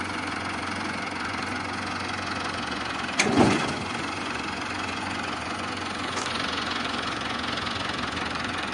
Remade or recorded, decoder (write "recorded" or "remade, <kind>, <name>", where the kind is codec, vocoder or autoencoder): remade, vocoder, Vocos